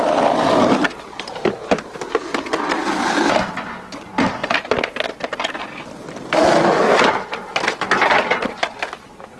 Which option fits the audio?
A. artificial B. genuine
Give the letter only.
B